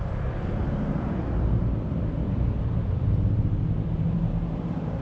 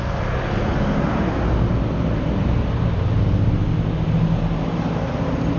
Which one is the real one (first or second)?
second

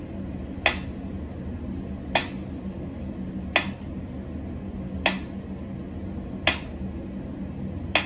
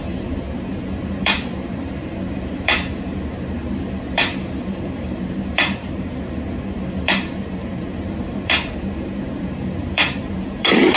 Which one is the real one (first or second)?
first